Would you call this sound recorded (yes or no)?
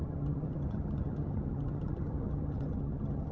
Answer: no